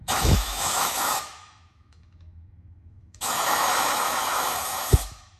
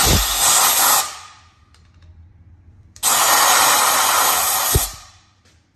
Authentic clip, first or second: second